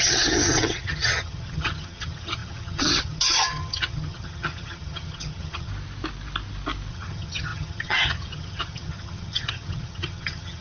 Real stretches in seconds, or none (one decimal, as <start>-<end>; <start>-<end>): 5.7-6.9